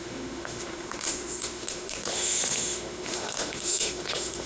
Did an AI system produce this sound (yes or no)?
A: yes